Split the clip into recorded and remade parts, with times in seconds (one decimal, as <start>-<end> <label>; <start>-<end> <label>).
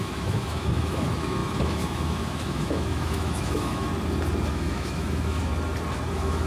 0.0-3.9 remade; 3.9-4.5 recorded; 4.5-5.5 remade; 5.5-6.1 recorded; 6.1-6.5 remade